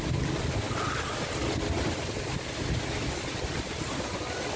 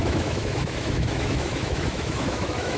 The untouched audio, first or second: first